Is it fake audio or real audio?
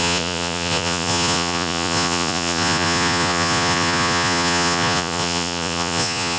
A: fake